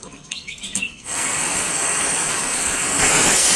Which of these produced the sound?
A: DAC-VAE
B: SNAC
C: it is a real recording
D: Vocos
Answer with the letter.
B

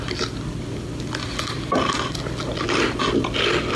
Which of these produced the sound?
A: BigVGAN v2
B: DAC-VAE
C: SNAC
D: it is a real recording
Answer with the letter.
D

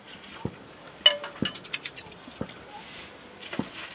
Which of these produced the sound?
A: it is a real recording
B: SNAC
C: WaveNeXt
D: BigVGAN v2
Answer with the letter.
A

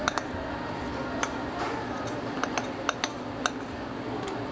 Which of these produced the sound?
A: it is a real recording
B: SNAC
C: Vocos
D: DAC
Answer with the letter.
A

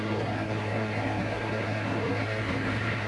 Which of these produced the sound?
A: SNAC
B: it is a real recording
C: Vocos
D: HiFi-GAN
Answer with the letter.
A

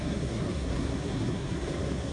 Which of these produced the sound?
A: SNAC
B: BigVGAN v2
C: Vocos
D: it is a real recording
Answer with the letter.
A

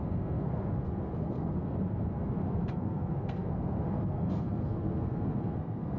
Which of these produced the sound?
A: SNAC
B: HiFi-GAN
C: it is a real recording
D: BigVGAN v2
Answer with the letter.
A